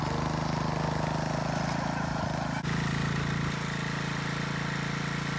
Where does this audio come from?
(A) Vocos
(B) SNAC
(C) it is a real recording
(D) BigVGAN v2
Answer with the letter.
C